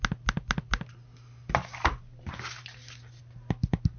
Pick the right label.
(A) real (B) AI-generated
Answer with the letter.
A